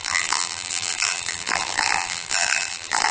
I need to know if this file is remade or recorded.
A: remade